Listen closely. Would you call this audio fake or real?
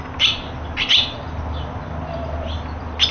real